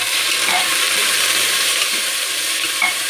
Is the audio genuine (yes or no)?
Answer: no